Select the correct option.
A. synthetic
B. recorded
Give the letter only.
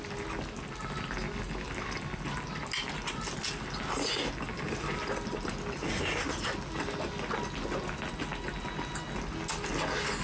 B